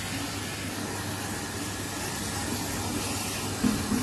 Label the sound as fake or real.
real